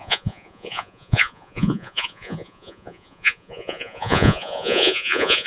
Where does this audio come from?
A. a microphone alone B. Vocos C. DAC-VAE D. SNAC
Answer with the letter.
B